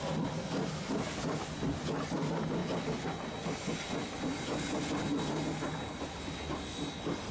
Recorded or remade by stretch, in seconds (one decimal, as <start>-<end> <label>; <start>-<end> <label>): 0.0-7.3 recorded

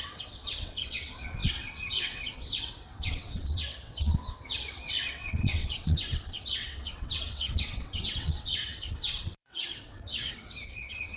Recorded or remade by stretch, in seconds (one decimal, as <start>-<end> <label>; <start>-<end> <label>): 0.0-11.2 remade

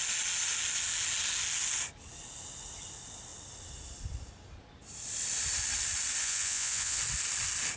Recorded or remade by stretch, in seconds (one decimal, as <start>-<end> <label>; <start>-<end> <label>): 0.0-6.2 recorded; 6.2-7.0 remade; 7.0-7.8 recorded

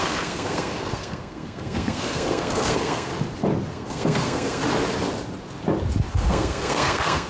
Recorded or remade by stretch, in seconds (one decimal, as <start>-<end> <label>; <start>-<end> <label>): 0.0-3.1 remade; 3.1-3.7 recorded; 3.7-4.6 remade; 4.6-6.1 recorded; 6.1-7.3 remade

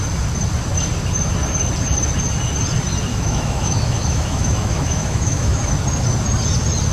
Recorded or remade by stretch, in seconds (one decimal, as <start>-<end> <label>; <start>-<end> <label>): 0.0-3.1 recorded; 3.1-5.7 remade; 5.7-6.9 recorded

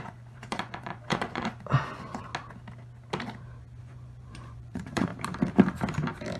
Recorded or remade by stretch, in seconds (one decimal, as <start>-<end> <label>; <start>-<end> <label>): 0.0-2.3 remade; 2.3-3.8 recorded; 3.8-5.1 remade; 5.1-6.4 recorded

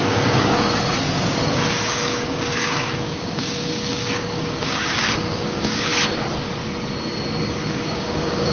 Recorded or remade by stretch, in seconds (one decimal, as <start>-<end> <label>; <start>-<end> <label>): 0.0-5.9 remade; 5.9-7.5 recorded; 7.5-8.5 remade